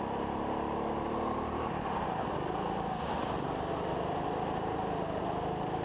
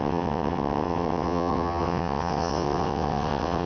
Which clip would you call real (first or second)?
first